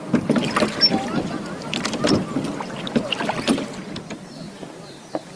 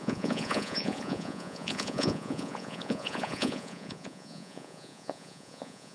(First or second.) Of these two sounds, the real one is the first